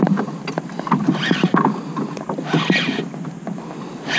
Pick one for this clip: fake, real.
real